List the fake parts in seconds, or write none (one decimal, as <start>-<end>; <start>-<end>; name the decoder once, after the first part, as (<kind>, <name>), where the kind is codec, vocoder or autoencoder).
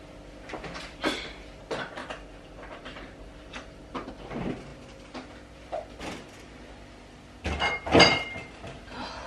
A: 2.0-4.1 (vocoder, BigVGAN v2); 8.4-9.3